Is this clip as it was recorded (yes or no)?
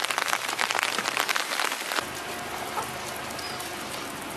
yes